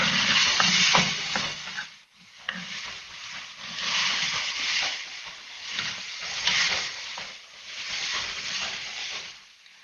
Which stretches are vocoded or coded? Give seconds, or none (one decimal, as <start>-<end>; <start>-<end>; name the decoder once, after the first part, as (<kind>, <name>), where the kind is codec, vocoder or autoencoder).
4.0-5.2 (vocoder, BigVGAN v2); 9.0-9.8